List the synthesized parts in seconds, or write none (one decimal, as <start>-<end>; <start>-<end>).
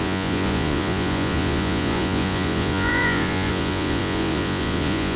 0.0-5.2